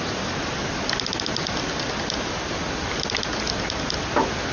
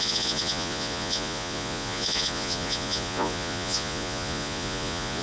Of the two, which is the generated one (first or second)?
second